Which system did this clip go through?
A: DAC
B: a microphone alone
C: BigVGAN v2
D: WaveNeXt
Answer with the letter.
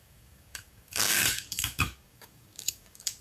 A